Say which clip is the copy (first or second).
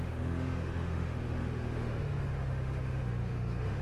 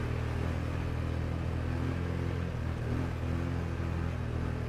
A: first